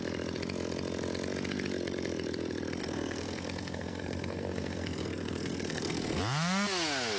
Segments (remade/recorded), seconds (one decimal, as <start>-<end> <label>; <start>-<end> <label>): 0.0-2.8 recorded; 2.8-6.2 remade; 6.2-7.2 recorded